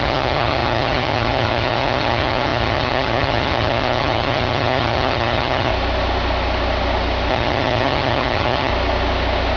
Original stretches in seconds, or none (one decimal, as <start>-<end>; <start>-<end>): 5.7-7.3; 8.7-9.6